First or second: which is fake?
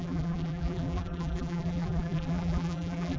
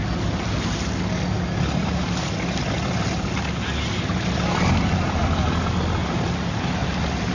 first